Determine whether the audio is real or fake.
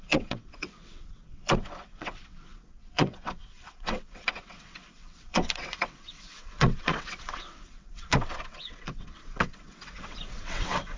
fake